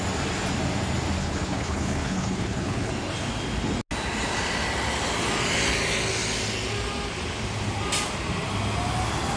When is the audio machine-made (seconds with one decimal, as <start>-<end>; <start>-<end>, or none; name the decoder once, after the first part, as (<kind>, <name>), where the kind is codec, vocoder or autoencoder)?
1.2-2.9 (codec, HILCodec)